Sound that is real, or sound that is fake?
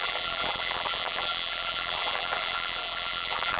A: fake